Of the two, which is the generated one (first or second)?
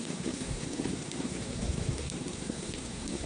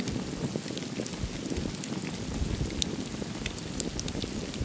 first